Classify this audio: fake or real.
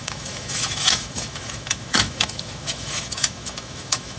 fake